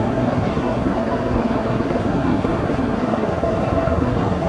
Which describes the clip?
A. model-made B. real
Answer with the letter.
A